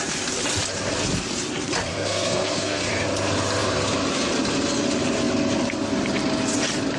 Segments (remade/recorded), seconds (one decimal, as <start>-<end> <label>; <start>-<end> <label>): 0.0-1.9 recorded; 1.9-2.9 remade; 2.9-7.0 recorded